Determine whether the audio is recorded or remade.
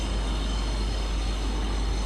remade